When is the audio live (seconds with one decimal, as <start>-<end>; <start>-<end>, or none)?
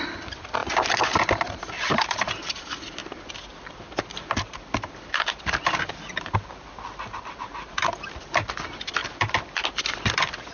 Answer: none